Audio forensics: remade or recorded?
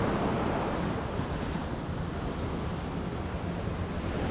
recorded